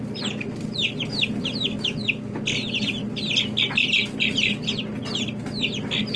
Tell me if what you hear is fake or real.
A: real